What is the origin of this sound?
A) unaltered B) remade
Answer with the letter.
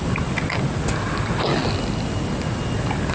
A